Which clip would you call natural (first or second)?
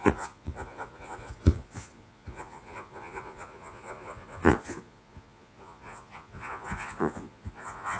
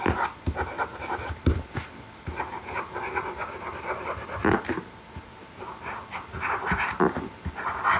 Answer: second